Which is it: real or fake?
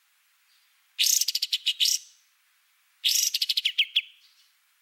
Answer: real